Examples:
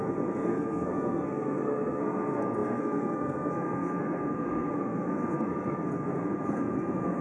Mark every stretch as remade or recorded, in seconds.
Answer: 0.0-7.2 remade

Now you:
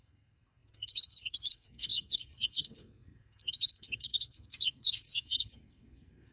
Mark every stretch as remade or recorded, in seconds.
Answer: 0.0-6.3 remade

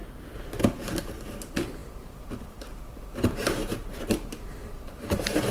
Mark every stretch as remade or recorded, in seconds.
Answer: 0.0-5.5 remade